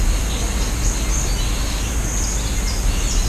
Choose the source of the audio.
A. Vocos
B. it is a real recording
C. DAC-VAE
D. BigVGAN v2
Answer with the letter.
B